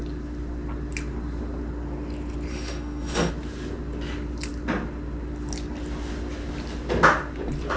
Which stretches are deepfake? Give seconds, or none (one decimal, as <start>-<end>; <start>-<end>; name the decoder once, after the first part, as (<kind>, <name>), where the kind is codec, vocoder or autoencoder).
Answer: 2.5-3.3 (autoencoder, DAC-VAE)